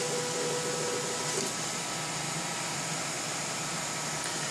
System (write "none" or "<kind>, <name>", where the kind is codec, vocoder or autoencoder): none